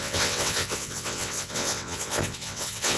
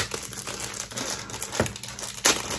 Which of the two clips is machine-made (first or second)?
first